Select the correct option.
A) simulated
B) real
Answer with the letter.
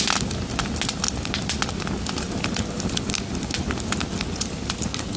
B